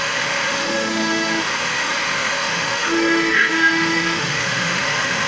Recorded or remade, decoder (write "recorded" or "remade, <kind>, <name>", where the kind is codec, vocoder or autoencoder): remade, autoencoder, DAC-VAE